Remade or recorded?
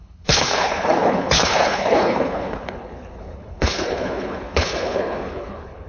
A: remade